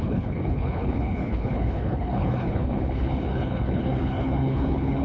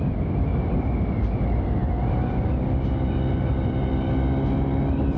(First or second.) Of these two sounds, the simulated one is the first